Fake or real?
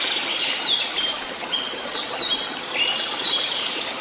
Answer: real